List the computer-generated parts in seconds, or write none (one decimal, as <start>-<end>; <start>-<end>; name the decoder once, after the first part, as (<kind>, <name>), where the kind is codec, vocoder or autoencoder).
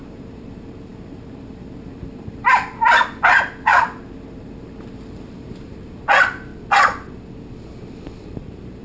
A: 0.0-6.5 (vocoder, BigVGAN v2); 8.2-8.8